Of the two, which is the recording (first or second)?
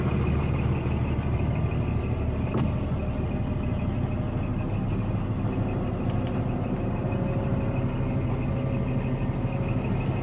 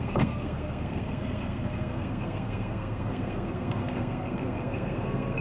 first